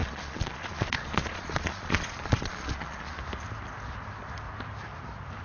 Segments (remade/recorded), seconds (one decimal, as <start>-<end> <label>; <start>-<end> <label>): 0.0-3.2 remade; 3.2-5.4 recorded